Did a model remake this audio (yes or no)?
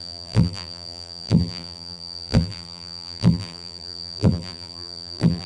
yes